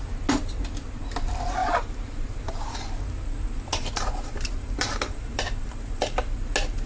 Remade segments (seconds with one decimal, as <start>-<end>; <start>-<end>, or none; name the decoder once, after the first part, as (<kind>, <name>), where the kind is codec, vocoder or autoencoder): 1.6-2.9 (vocoder, BigVGAN v2); 3.8-6.2